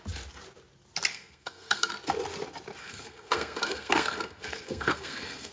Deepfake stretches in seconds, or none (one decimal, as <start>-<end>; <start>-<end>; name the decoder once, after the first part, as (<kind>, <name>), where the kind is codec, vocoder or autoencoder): 1.1-1.9 (codec, SNAC); 2.8-5.5